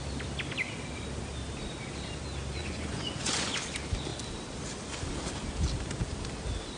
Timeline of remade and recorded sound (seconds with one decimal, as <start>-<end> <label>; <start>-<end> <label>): 0.0-2.6 recorded; 2.6-3.5 remade; 3.5-6.8 recorded